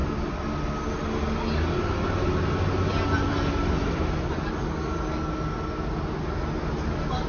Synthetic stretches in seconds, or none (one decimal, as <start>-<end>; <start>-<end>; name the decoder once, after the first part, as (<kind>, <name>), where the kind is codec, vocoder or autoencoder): none